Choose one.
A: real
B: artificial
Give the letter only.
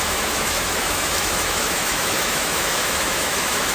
B